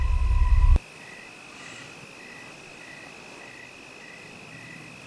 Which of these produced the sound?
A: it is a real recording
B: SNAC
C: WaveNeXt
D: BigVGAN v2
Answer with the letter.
A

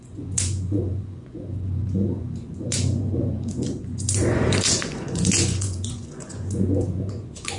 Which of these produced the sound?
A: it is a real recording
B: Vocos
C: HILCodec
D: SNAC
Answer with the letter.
B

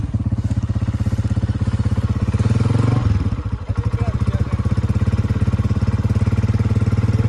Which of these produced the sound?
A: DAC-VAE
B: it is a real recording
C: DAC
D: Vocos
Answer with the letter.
B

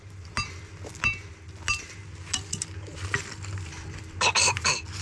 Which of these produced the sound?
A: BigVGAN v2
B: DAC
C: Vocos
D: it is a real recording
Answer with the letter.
D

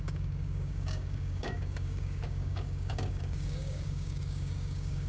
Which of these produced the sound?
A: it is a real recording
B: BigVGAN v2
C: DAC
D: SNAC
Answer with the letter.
C